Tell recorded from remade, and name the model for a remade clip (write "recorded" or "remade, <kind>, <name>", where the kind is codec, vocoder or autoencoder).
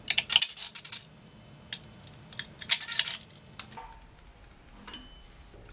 recorded